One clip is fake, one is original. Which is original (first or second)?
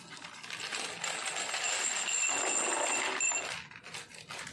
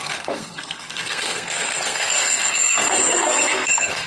first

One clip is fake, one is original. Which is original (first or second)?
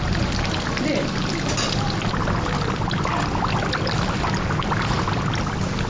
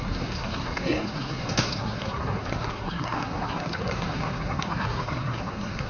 first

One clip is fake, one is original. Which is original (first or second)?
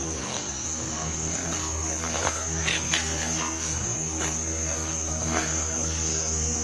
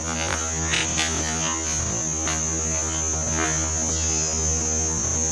second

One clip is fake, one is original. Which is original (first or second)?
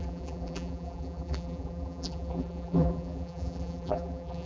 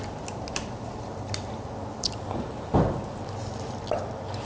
second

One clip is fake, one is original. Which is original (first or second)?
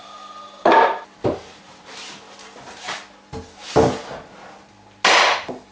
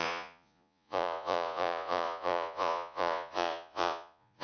first